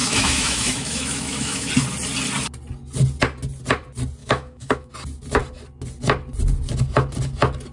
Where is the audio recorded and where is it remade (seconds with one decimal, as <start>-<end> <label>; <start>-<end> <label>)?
0.0-1.7 remade; 1.7-4.2 recorded; 4.2-4.9 remade; 4.9-7.7 recorded